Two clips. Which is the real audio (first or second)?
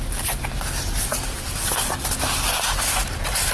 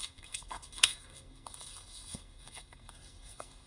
first